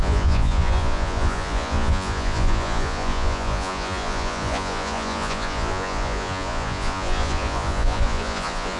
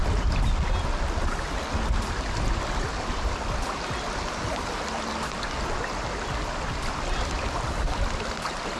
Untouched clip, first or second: second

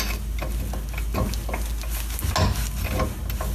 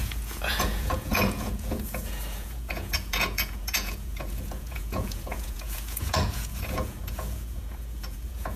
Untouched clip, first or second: first